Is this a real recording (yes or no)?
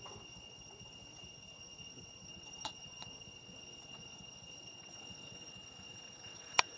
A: no